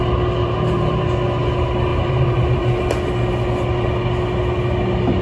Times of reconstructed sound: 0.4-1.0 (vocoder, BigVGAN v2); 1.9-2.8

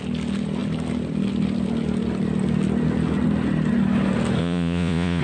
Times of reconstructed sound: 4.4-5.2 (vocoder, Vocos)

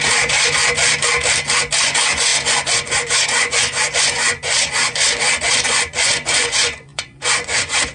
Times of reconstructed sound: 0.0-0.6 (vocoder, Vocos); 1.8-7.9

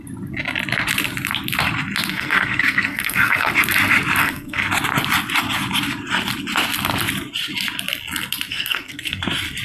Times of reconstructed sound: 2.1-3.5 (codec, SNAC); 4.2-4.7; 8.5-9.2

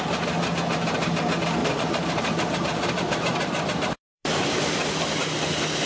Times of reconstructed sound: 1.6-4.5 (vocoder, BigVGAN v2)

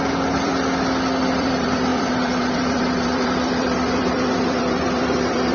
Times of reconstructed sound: 0.0-0.5 (vocoder, BigVGAN v2); 1.3-5.5